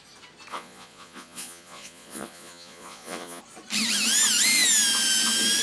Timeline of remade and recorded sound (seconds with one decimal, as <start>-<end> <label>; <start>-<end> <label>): 0.0-0.5 recorded; 0.5-3.4 remade; 3.4-5.6 recorded